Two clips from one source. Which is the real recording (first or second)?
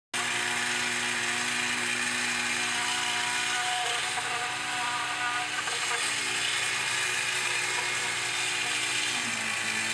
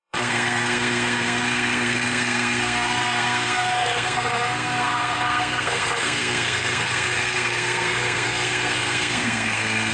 first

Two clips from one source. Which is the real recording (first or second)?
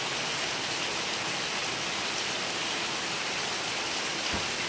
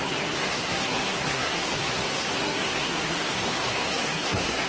first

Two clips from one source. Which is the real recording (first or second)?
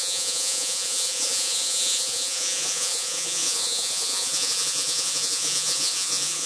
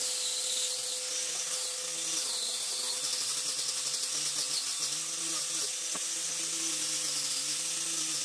second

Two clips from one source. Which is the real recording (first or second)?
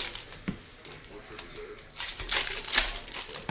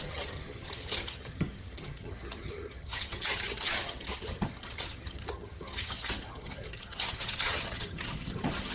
first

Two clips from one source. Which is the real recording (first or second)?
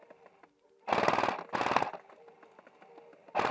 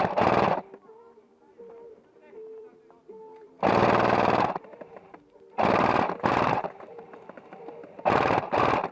first